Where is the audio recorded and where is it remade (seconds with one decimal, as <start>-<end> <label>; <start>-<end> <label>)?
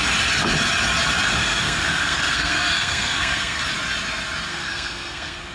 0.0-1.4 recorded; 1.4-3.6 remade; 3.6-4.5 recorded; 4.5-5.5 remade